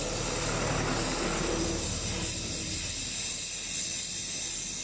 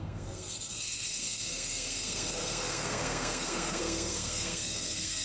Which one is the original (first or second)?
first